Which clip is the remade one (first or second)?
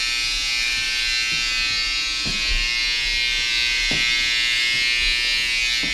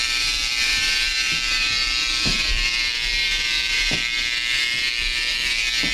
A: second